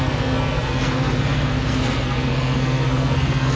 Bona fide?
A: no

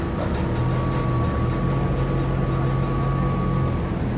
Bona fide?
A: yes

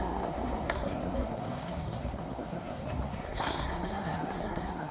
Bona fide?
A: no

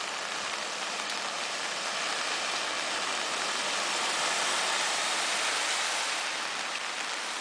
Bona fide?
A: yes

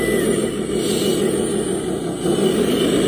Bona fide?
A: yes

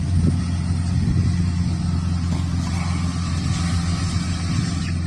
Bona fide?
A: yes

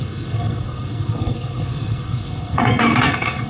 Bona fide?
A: no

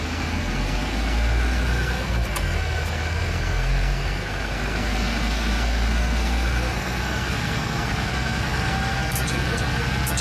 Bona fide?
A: no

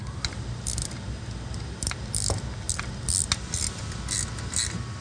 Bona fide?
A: yes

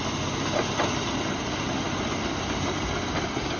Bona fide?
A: yes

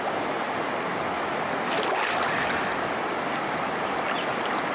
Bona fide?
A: yes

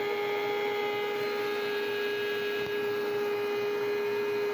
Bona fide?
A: yes